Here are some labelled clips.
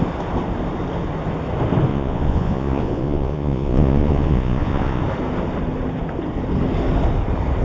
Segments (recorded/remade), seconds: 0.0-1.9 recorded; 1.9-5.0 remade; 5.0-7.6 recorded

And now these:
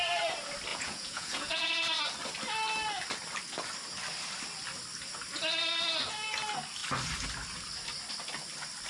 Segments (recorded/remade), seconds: 0.0-0.7 recorded; 0.7-1.7 remade; 1.7-8.9 recorded

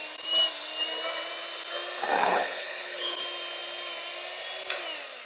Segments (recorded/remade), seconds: 0.0-2.2 recorded; 2.2-3.2 remade; 3.2-5.3 recorded

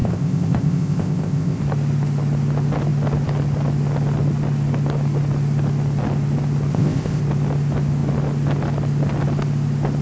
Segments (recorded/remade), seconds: 0.0-1.6 remade; 1.6-6.7 recorded; 6.7-7.2 remade; 7.2-10.0 recorded